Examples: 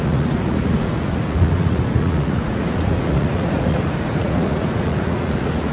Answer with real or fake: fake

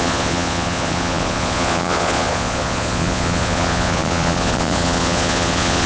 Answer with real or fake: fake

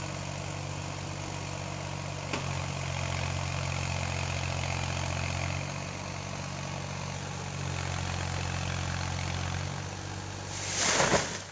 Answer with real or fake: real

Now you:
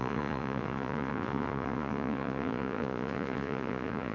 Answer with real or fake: fake